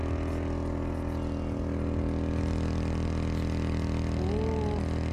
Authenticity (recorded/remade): recorded